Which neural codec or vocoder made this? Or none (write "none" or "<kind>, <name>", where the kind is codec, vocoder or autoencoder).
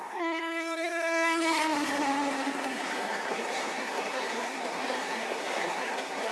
codec, SNAC